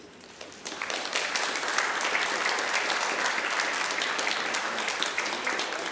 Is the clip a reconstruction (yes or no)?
yes